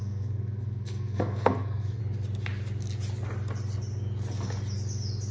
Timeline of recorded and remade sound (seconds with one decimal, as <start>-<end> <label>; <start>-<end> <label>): 0.0-2.0 remade; 2.0-5.3 recorded